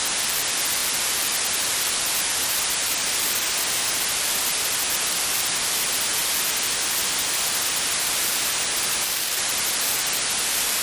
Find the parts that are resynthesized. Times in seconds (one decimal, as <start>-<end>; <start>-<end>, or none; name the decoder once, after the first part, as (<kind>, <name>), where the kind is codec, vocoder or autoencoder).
none